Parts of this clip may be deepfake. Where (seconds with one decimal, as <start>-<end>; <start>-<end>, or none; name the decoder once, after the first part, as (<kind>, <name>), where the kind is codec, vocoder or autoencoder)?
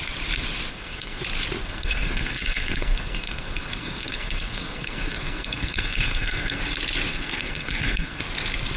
0.7-1.2 (codec, SNAC); 1.6-6.6; 7.1-8.2